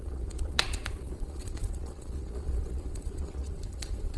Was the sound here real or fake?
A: fake